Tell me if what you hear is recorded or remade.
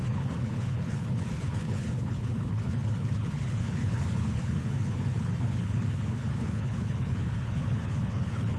remade